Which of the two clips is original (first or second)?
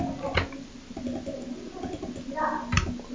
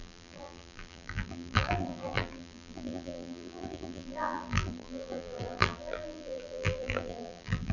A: first